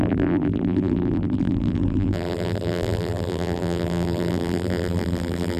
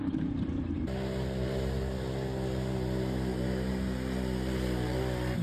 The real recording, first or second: second